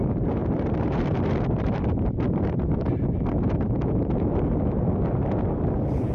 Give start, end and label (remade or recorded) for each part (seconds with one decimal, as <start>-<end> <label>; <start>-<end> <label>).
0.0-0.4 recorded; 0.4-4.1 remade; 4.1-6.1 recorded